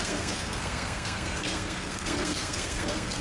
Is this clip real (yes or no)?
no